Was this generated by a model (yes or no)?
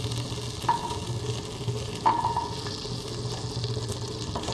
no